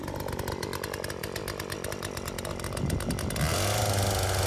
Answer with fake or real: real